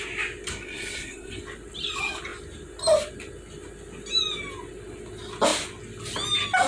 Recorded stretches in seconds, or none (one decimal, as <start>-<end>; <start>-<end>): 0.0-0.5; 1.4-6.7